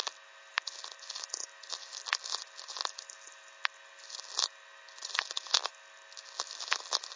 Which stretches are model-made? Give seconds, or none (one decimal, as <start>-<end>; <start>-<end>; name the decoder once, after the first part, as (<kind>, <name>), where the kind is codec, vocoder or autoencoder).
none